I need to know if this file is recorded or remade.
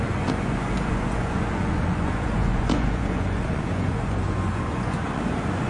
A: remade